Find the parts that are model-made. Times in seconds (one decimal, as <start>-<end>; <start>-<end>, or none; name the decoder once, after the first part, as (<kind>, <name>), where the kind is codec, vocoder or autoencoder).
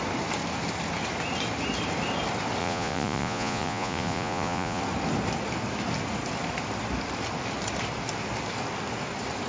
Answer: 2.6-4.8 (vocoder, Vocos)